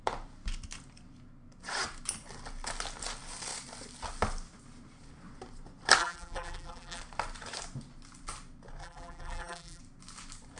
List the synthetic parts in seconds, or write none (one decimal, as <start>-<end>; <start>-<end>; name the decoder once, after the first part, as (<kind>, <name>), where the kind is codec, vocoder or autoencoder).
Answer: 6.0-7.0 (vocoder, BigVGAN v2); 8.8-9.8